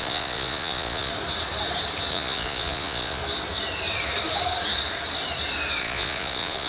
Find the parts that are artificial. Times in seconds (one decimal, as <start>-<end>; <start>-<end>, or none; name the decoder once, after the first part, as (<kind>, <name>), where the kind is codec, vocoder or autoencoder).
0.0-1.1 (vocoder, Vocos); 2.1-3.2; 5.8-6.7